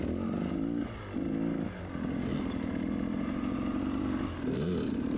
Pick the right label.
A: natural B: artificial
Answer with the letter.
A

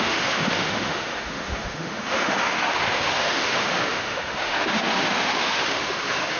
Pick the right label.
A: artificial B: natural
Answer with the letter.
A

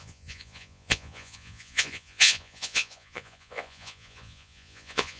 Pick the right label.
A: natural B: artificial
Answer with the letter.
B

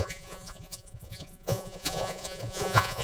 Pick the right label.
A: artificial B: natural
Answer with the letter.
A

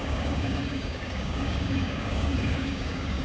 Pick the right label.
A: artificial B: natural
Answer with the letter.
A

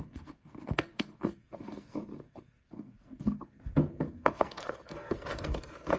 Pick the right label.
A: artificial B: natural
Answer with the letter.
A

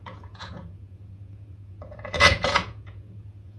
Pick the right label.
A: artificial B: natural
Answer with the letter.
A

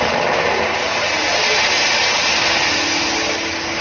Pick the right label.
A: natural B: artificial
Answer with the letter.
A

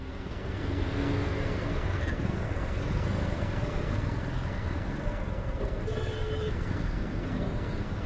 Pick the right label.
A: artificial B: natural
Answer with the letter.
A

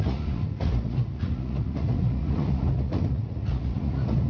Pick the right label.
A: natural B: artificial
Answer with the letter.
B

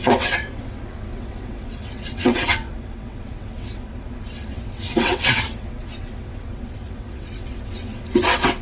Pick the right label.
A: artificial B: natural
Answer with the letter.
A